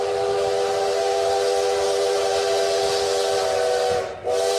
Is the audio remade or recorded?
recorded